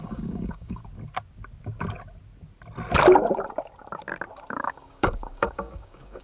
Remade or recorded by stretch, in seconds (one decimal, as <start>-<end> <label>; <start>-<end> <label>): 0.0-0.8 remade; 0.8-4.5 recorded; 4.5-6.2 remade